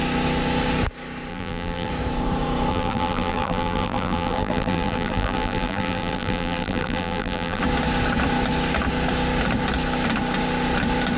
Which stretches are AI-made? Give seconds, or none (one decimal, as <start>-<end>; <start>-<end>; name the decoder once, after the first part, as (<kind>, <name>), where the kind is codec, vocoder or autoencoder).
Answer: 1.3-1.9 (vocoder, BigVGAN v2); 2.7-7.6